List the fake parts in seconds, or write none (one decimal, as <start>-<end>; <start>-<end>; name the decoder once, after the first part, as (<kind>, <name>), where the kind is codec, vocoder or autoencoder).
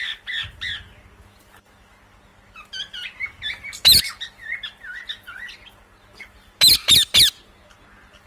none